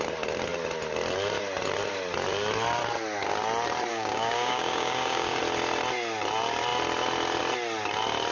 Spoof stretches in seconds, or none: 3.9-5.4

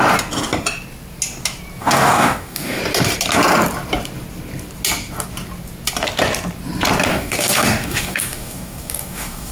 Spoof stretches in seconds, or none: 1.8-2.8; 7.1-9.5

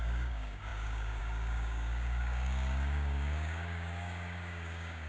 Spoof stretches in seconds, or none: 0.0-5.1

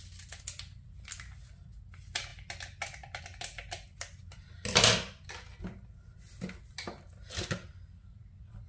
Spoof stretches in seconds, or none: none

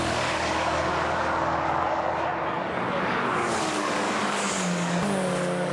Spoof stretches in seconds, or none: 0.0-5.7